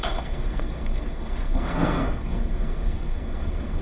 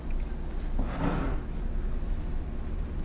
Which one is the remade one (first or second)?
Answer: first